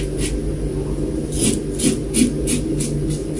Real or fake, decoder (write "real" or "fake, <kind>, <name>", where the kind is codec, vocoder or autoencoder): real